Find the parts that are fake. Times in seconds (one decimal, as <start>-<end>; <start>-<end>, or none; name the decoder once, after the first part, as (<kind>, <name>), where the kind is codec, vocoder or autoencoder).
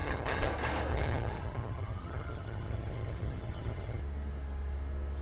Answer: 0.0-0.5 (vocoder, HiFi-GAN); 0.9-4.0